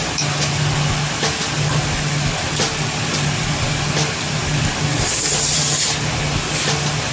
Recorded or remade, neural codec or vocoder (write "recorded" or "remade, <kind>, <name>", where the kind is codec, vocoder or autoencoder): recorded